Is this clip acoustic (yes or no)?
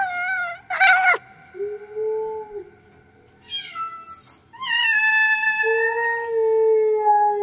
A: yes